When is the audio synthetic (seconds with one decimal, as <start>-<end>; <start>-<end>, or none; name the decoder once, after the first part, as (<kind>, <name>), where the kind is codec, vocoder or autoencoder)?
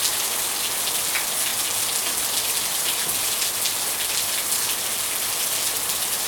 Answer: none